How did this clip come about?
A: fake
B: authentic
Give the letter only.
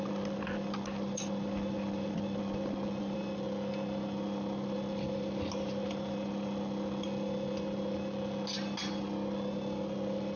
B